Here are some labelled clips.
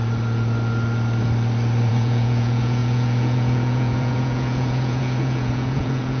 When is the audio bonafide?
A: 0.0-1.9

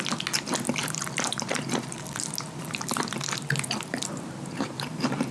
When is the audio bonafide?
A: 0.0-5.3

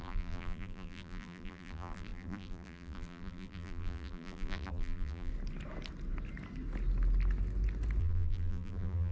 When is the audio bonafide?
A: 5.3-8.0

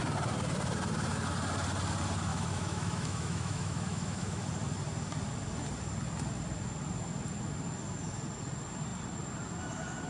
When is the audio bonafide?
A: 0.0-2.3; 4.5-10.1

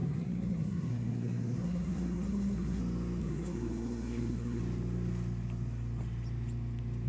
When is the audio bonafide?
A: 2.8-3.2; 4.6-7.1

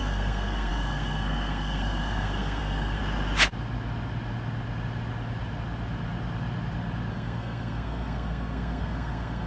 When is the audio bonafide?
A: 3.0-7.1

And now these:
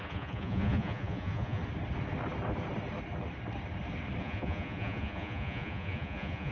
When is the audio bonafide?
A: 1.6-4.2

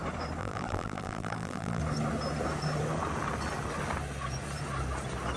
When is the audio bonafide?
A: 0.0-0.4; 1.8-5.4